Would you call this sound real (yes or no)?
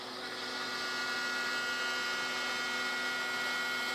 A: yes